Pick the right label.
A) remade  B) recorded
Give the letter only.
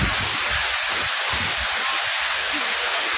B